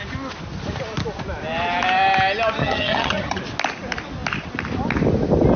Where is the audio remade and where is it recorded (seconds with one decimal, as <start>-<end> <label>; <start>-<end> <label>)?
0.0-2.6 recorded; 2.6-3.4 remade; 3.4-5.6 recorded